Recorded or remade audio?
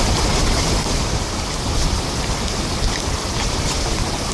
recorded